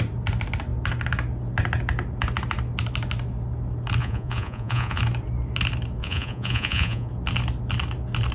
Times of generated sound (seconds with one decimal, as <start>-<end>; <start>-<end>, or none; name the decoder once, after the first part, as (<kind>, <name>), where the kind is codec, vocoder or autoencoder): 4.0-5.0 (vocoder, Vocos); 6.0-7.1

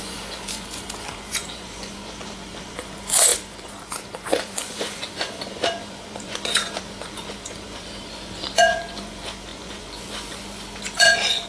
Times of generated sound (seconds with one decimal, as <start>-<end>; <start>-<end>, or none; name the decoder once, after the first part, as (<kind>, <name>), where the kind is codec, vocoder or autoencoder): 0.0-11.5 (vocoder, Vocos)

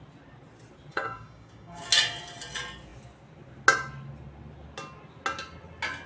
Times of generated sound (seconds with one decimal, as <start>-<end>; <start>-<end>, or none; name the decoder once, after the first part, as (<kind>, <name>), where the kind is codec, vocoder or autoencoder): 0.9-1.8 (codec, DAC)

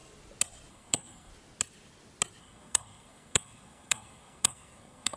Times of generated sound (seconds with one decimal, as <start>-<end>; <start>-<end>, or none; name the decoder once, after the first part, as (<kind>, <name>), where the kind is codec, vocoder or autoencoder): 0.7-1.3 (codec, SNAC); 2.4-5.2

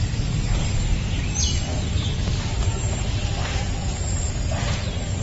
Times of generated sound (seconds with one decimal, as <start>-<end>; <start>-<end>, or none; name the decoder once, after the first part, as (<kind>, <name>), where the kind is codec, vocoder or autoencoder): 3.8-5.2 (vocoder, BigVGAN v2)

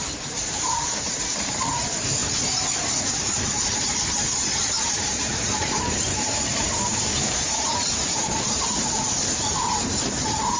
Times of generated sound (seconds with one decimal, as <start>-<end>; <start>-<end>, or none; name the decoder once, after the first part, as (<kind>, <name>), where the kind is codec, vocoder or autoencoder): 0.0-2.2 (vocoder, BigVGAN v2); 2.9-10.6